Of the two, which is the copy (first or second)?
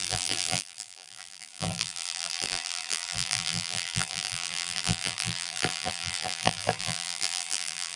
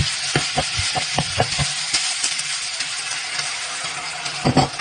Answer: first